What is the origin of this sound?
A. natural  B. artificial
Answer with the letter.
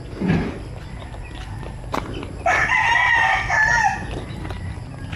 A